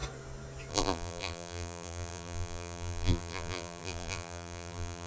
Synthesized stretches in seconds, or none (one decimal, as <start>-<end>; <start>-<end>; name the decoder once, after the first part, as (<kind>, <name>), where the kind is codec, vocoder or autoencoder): 0.7-5.1 (vocoder, BigVGAN v2)